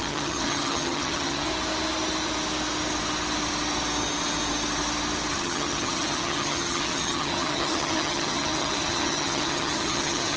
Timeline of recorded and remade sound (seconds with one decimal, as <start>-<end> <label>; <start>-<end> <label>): 0.0-1.5 remade; 1.5-5.3 recorded; 5.3-10.4 remade